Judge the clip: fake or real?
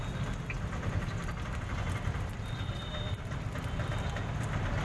real